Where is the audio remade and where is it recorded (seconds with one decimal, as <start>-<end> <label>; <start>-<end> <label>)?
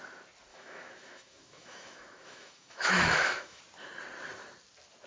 0.0-0.5 recorded; 0.5-3.6 remade; 3.6-5.1 recorded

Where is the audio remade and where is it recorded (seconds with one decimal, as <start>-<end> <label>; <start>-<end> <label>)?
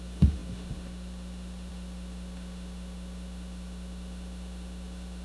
0.0-5.2 remade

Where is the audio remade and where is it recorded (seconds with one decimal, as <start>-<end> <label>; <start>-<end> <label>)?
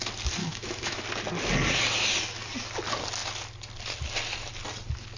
0.0-0.4 recorded; 0.4-1.0 remade; 1.0-5.2 recorded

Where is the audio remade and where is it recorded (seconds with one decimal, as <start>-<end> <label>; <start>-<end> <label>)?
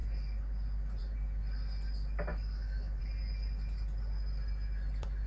0.0-2.3 recorded; 2.3-3.0 remade; 3.0-5.3 recorded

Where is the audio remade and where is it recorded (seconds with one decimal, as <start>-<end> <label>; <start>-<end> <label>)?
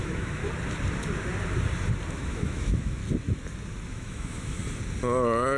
0.0-0.4 remade; 0.4-2.1 recorded; 2.1-3.0 remade; 3.0-3.9 recorded; 3.9-4.6 remade; 4.6-5.6 recorded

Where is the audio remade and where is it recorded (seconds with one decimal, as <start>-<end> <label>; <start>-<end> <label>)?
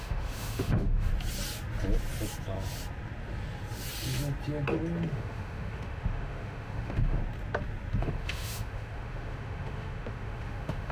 0.0-1.1 remade; 1.1-5.1 recorded; 5.1-7.2 remade; 7.2-8.0 recorded; 8.0-10.9 remade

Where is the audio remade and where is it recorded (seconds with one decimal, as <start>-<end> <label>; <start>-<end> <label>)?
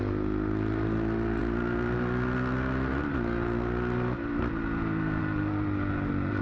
0.0-6.4 recorded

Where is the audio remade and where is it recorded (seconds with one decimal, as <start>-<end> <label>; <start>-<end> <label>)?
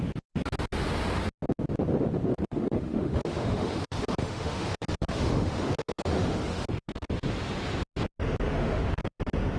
0.0-2.3 recorded; 2.3-7.1 remade; 7.1-8.5 recorded; 8.5-9.2 remade; 9.2-9.6 recorded